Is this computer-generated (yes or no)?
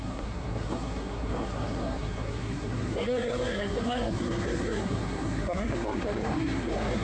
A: yes